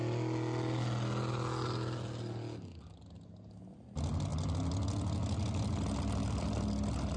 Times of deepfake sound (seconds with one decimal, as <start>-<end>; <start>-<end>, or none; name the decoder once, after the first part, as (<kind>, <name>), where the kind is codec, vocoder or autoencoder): none